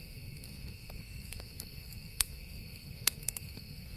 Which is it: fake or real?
fake